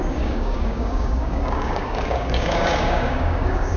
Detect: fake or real fake